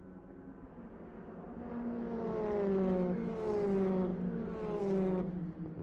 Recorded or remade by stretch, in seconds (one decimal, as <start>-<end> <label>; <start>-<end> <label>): 0.0-5.8 recorded